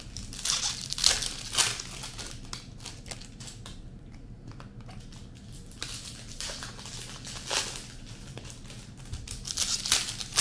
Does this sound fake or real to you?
real